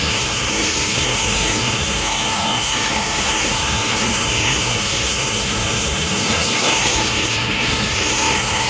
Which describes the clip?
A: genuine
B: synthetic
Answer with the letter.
B